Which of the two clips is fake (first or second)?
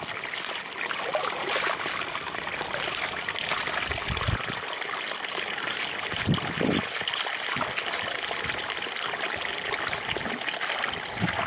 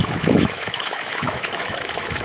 second